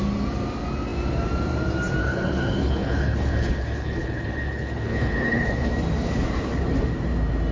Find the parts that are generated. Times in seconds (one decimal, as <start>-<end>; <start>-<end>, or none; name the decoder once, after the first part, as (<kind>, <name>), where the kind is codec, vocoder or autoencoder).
2.0-5.7 (codec, HILCodec)